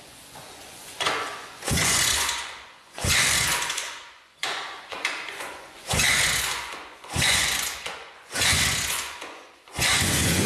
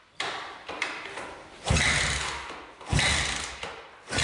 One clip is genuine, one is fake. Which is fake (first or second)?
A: first